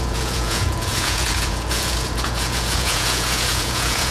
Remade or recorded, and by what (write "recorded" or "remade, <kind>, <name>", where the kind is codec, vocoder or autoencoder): remade, vocoder, Vocos